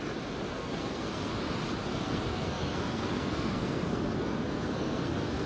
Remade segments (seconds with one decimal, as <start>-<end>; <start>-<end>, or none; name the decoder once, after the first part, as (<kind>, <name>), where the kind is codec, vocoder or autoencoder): 0.5-1.3 (codec, SNAC); 1.9-5.5